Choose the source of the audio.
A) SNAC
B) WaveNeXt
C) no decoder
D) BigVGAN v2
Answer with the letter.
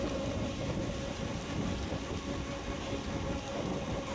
C